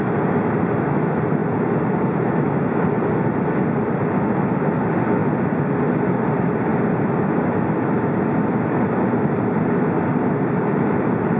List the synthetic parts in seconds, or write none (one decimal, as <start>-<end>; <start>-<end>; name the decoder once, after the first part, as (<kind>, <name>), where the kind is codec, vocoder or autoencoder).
none